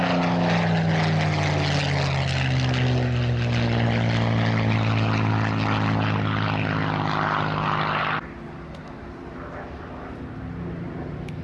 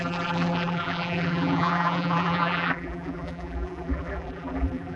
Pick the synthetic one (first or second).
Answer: second